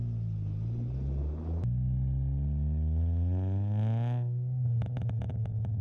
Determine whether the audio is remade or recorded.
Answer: recorded